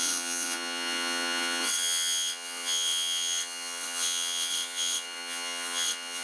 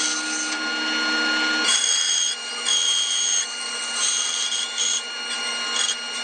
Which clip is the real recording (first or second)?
second